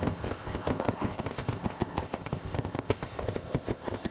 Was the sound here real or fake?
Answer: fake